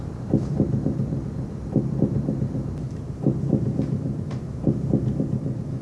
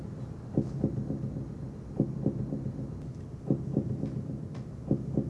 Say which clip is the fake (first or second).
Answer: first